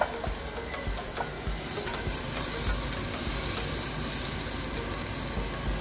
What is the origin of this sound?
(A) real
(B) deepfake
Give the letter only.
A